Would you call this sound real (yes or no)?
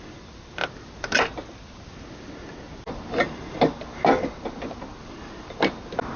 yes